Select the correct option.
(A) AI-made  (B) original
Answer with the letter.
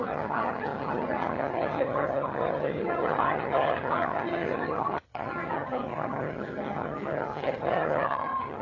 A